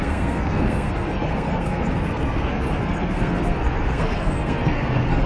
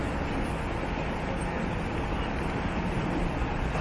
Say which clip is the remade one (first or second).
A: first